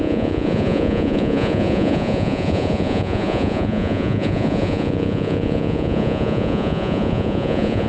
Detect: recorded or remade remade